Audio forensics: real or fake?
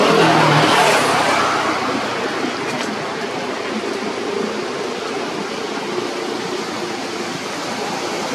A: real